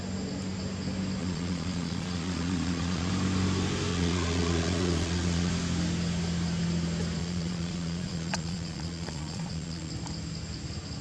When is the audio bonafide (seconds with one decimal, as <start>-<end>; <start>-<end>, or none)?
0.0-1.2; 3.1-3.9; 5.5-7.2; 9.9-11.0